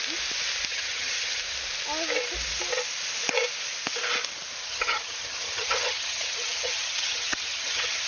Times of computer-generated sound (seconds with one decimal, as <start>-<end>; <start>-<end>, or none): 0.7-1.4; 4.6-8.1